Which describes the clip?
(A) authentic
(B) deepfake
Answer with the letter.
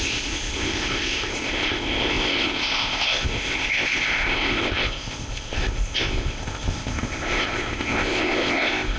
B